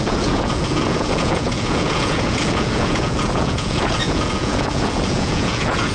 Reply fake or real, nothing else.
fake